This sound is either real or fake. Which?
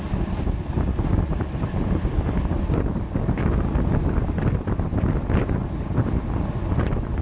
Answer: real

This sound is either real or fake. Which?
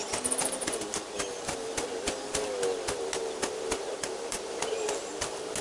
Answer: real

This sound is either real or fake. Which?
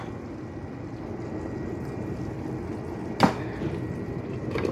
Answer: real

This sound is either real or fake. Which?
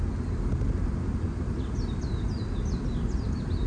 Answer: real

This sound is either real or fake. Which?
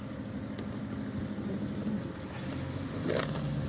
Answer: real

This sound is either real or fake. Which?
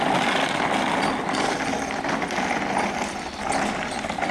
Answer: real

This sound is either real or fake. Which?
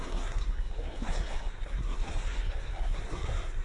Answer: fake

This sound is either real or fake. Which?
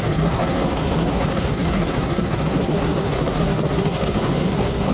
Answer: fake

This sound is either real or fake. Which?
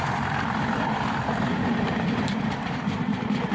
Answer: real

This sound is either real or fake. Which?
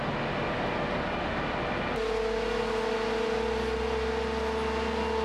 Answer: real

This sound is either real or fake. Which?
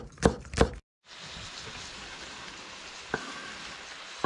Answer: real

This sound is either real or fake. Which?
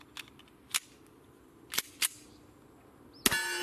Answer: real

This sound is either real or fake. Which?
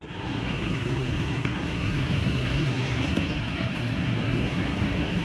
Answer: fake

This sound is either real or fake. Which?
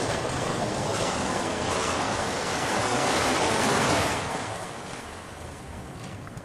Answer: fake